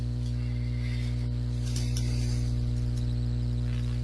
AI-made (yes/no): yes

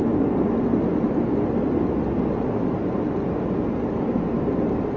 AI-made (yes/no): no